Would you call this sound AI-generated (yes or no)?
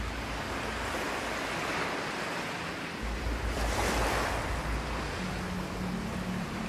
no